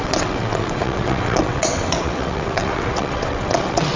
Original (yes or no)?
no